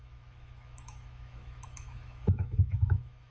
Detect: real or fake fake